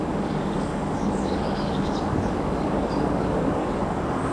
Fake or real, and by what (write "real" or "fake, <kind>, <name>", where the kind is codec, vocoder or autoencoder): fake, codec, DAC